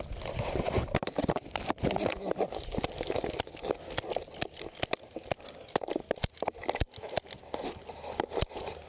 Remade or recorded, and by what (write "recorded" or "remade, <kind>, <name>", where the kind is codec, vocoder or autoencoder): recorded